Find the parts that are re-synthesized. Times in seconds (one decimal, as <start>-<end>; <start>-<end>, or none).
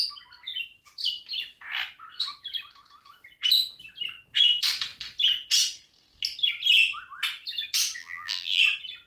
8.0-8.6